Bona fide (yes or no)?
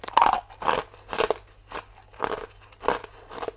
yes